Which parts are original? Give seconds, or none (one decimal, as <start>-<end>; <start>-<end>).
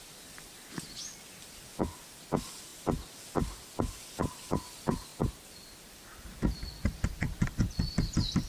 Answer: 0.0-5.1